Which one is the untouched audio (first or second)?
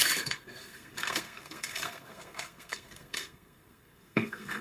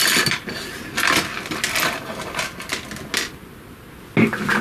second